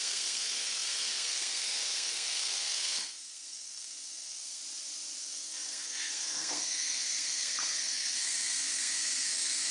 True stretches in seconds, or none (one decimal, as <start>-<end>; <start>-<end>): 4.6-5.2